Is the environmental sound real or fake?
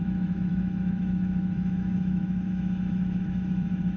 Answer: fake